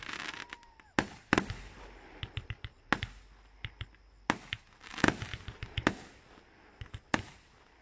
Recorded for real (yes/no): yes